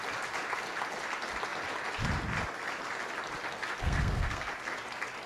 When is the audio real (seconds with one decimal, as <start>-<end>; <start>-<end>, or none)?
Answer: 0.0-3.8; 4.5-5.3